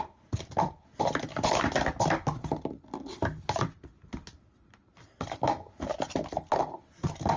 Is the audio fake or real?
real